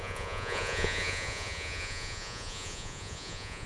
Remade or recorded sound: remade